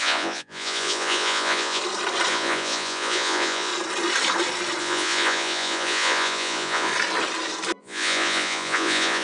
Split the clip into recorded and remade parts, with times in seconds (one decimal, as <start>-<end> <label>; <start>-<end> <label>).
0.0-1.8 remade; 1.8-2.3 recorded; 2.3-3.7 remade; 3.7-4.8 recorded; 4.8-6.9 remade; 6.9-7.8 recorded; 7.8-9.2 remade